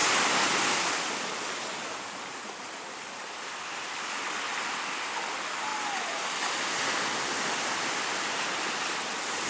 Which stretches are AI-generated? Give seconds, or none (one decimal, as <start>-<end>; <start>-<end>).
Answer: none